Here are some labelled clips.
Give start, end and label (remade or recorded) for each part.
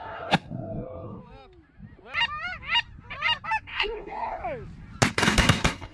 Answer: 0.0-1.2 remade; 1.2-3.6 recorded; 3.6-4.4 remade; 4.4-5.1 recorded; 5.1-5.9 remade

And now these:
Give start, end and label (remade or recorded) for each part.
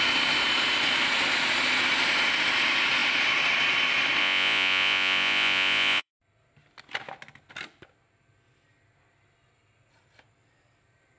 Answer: 0.0-4.2 recorded; 4.2-6.1 remade; 6.1-11.2 recorded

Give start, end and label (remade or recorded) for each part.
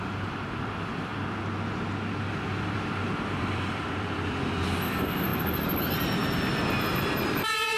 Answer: 0.0-1.1 remade; 1.1-2.3 recorded; 2.3-5.3 remade; 5.3-5.8 recorded; 5.8-6.2 remade; 6.2-7.3 recorded; 7.3-7.8 remade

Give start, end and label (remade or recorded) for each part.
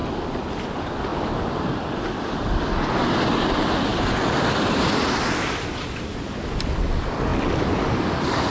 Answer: 0.0-1.1 recorded; 1.1-1.6 remade; 1.6-8.5 recorded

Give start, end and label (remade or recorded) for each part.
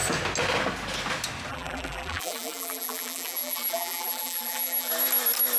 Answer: 0.0-1.5 recorded; 1.5-4.9 remade; 4.9-5.6 recorded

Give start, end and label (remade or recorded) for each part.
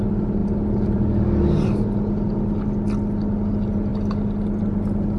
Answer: 0.0-5.2 recorded